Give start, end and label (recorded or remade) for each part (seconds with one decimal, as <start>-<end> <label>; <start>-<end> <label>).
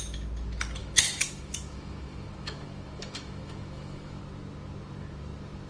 0.0-0.8 recorded; 0.8-4.2 remade; 4.2-5.7 recorded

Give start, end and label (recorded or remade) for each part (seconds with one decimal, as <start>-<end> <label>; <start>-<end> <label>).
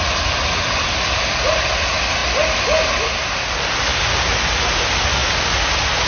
0.0-6.1 recorded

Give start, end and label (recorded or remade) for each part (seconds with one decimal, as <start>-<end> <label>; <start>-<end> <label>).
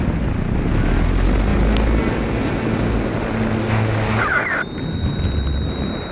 0.0-6.1 recorded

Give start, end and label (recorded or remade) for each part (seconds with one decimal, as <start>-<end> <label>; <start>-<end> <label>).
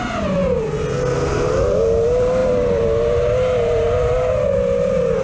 0.0-0.4 remade; 0.4-1.3 recorded; 1.3-5.2 remade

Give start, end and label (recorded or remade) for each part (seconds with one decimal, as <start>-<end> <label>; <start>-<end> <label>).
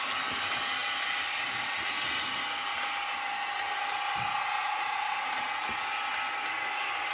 0.0-4.6 recorded; 4.6-5.5 remade; 5.5-7.1 recorded